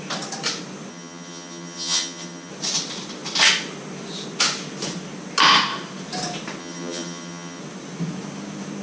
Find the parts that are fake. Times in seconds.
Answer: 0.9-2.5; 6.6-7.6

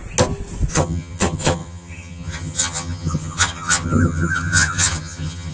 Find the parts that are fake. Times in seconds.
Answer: 0.7-5.5